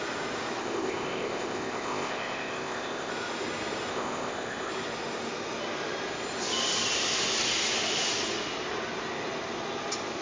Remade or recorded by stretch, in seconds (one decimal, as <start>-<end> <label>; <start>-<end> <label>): 0.0-0.6 recorded; 0.6-3.1 remade; 3.1-3.9 recorded; 3.9-4.7 remade; 4.7-10.2 recorded